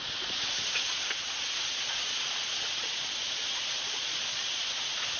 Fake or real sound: fake